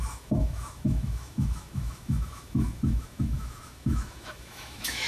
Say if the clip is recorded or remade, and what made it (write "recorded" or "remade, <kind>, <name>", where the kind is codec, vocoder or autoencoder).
remade, autoencoder, DAC-VAE